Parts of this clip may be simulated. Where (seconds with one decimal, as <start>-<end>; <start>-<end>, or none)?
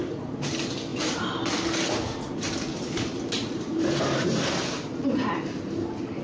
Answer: 2.7-5.3